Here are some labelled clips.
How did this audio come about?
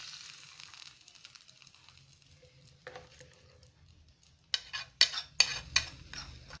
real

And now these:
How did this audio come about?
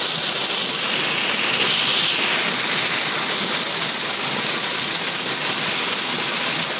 real